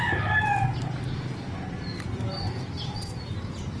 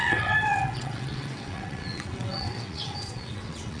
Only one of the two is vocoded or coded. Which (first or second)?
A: second